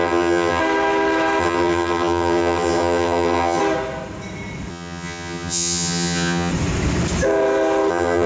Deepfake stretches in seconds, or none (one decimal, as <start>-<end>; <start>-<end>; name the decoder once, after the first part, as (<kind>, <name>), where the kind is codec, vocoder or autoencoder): 0.0-0.6 (vocoder, HiFi-GAN); 1.4-3.6; 4.7-6.5; 7.9-8.3